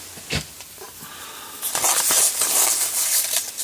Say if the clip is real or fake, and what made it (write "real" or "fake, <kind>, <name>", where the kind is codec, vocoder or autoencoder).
real